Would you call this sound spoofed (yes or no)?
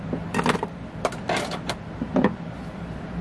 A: yes